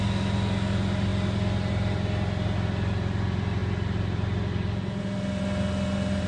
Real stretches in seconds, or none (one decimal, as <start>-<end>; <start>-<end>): 0.0-6.3